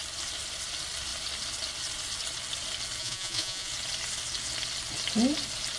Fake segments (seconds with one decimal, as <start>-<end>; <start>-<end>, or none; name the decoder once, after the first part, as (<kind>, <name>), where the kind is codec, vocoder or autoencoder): 3.0-3.7 (vocoder, Vocos)